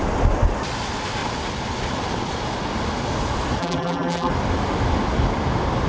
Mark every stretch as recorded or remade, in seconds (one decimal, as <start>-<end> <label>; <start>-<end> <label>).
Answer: 0.0-3.6 recorded; 3.6-4.3 remade; 4.3-5.9 recorded